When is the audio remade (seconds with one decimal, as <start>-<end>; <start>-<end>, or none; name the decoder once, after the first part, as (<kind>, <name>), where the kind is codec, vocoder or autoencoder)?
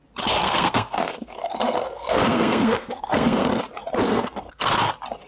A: 0.4-3.6 (codec, SNAC); 4.1-4.7